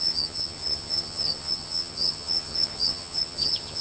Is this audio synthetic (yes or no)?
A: yes